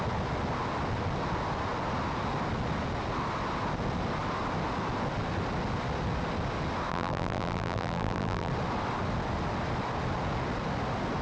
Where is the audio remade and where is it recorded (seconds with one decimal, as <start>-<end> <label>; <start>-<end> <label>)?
0.0-6.9 recorded; 6.9-8.5 remade; 8.5-11.2 recorded